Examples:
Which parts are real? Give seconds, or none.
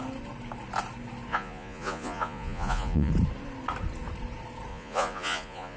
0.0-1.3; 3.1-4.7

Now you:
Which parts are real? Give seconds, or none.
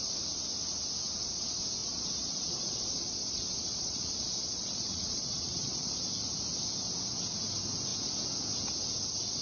0.0-1.8; 6.1-9.4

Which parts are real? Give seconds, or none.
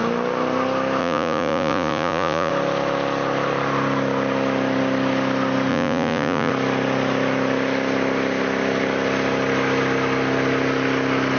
0.0-1.0; 2.5-5.7; 6.5-11.4